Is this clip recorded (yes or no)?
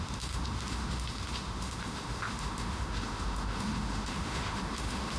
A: no